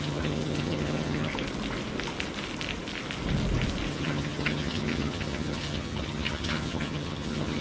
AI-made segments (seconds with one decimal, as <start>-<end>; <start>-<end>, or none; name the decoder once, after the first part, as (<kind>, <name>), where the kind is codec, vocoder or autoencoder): 0.0-1.3 (vocoder, HiFi-GAN); 3.9-7.6